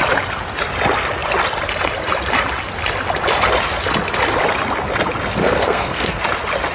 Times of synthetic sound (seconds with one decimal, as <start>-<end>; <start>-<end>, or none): 5.4-6.2